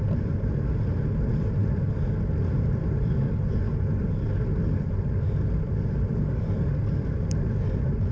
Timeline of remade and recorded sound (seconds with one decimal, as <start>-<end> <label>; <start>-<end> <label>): 0.0-1.6 recorded; 1.6-3.3 remade; 3.3-8.1 recorded